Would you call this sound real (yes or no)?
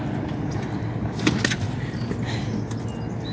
yes